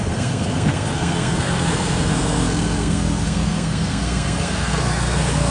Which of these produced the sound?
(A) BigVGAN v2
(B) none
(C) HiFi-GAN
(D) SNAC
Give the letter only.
D